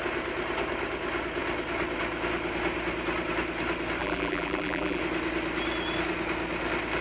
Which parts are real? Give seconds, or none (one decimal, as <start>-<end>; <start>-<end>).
0.0-4.0; 5.0-7.0